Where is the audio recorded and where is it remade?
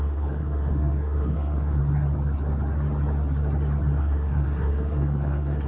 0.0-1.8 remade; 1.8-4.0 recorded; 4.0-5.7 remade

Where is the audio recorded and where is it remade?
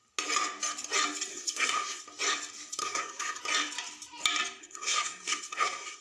0.0-1.3 recorded; 1.3-2.0 remade; 2.0-2.8 recorded; 2.8-3.4 remade; 3.4-4.6 recorded; 4.6-6.0 remade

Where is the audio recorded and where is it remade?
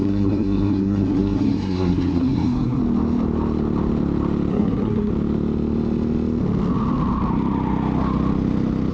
0.0-2.8 remade; 2.8-4.5 recorded; 4.5-5.1 remade; 5.1-8.9 recorded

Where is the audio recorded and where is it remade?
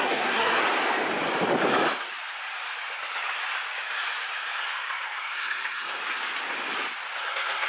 0.0-0.6 remade; 0.6-4.6 recorded; 4.6-6.0 remade; 6.0-7.2 recorded; 7.2-7.7 remade